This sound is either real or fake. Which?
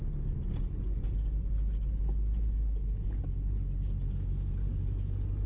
real